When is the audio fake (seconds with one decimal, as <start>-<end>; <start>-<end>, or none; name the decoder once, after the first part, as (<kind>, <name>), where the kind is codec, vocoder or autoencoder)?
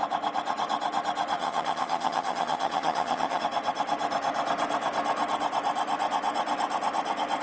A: 1.4-3.4 (vocoder, HiFi-GAN)